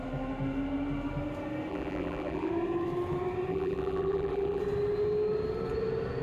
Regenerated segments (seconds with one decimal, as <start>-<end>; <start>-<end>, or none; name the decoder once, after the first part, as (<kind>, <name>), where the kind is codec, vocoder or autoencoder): 1.7-2.5 (vocoder, BigVGAN v2); 3.5-4.6